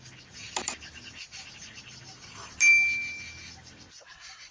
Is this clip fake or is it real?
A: real